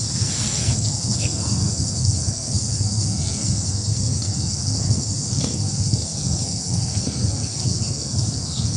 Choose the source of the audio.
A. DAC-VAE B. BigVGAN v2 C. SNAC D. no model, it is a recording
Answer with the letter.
C